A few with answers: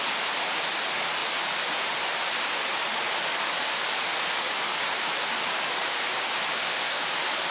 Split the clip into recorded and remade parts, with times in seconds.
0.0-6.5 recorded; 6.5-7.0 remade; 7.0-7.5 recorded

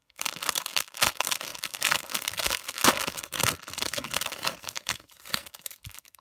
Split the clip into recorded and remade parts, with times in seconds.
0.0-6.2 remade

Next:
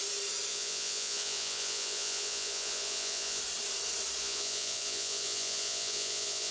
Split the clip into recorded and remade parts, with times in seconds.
0.0-0.5 recorded; 0.5-3.4 remade; 3.4-4.2 recorded; 4.2-6.5 remade

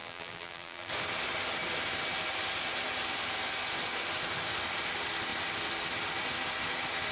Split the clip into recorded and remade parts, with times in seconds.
0.0-0.9 remade; 0.9-7.1 recorded

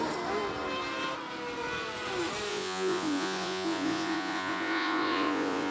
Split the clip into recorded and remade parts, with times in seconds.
0.0-2.5 recorded; 2.5-5.7 remade

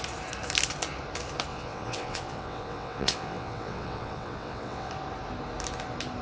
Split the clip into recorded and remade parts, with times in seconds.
0.0-1.5 recorded; 1.5-4.9 remade; 4.9-6.2 recorded

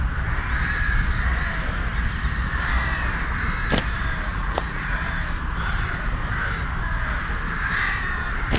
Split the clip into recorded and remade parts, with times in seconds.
0.0-4.3 recorded; 4.3-5.0 remade; 5.0-8.6 recorded